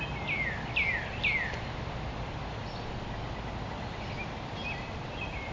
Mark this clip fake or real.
real